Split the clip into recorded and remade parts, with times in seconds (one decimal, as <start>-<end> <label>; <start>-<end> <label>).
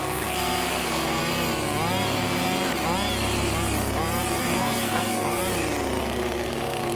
0.0-1.2 remade; 1.2-4.4 recorded; 4.4-5.4 remade; 5.4-6.0 recorded; 6.0-7.0 remade